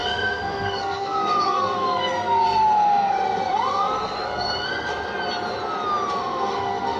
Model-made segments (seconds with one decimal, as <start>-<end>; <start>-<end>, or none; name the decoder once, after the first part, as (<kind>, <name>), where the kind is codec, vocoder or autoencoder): 0.0-4.9 (codec, SNAC); 6.2-7.0